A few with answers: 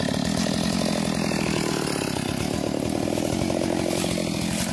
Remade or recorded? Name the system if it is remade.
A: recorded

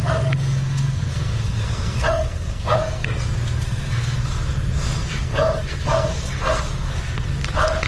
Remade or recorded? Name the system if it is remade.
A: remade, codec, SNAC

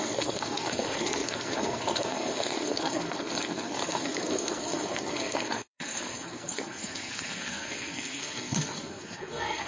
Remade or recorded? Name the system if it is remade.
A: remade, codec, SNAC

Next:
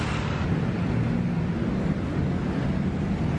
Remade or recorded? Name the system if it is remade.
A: recorded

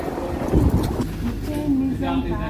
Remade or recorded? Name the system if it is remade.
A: recorded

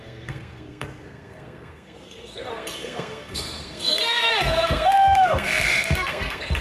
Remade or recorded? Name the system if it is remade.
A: remade, codec, SNAC